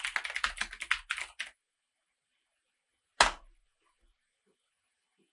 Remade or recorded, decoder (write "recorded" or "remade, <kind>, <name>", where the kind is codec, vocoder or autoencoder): recorded